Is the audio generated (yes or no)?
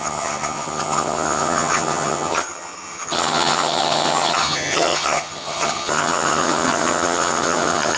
yes